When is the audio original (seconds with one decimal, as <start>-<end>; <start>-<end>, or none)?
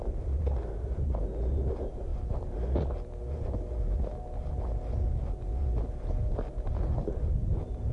0.0-7.9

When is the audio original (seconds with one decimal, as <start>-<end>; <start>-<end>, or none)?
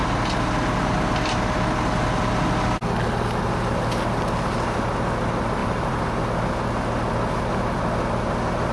0.0-5.6; 6.2-8.7